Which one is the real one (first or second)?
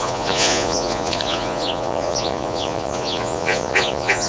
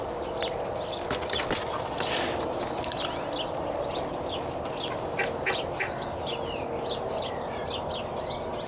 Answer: second